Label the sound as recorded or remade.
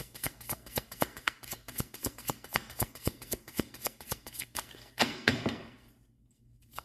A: remade